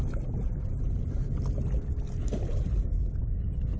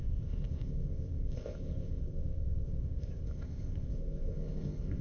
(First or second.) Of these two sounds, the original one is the first